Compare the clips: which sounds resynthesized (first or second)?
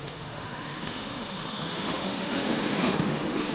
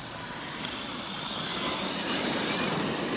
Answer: first